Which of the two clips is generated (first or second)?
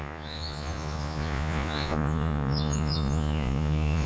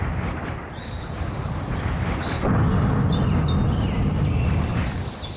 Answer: first